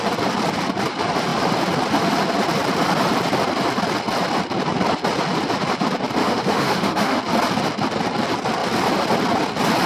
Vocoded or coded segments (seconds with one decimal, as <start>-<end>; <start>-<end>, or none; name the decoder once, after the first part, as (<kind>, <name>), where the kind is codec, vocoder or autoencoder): 6.2-7.2 (autoencoder, DAC-VAE)